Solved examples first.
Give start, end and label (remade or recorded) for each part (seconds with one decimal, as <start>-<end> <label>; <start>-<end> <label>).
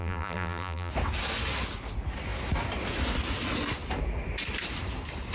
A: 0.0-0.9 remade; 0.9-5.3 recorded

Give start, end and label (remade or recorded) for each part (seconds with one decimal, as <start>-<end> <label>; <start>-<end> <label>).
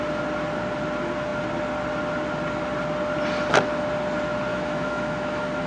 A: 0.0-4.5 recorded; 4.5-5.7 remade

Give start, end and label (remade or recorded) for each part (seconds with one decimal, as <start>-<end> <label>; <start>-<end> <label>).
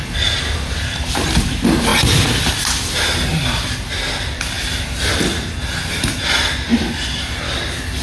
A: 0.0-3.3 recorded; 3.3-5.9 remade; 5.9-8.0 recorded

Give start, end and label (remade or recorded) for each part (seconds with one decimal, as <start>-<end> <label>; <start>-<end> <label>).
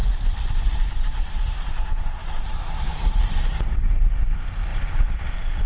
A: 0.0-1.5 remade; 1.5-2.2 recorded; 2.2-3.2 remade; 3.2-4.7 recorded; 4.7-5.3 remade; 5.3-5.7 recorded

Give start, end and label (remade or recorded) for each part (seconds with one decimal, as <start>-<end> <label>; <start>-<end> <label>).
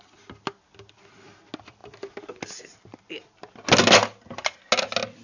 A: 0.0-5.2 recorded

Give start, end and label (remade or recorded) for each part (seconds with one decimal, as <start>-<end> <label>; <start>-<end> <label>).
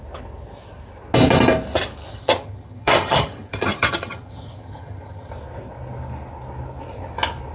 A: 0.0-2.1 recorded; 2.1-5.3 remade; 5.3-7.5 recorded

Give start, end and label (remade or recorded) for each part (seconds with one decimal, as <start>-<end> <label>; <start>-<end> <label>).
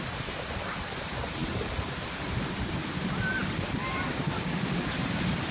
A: 0.0-1.4 recorded; 1.4-2.9 remade; 2.9-5.5 recorded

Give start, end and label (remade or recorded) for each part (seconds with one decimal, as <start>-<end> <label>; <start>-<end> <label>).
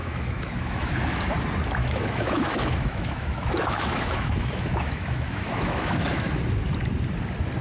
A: 0.0-0.9 remade; 0.9-1.8 recorded; 1.8-6.4 remade; 6.4-7.6 recorded